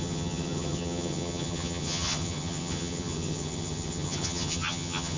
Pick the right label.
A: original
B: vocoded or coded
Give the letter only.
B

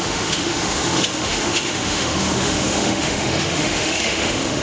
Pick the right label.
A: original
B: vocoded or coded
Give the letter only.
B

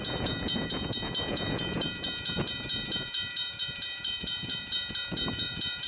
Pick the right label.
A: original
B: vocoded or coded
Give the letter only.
B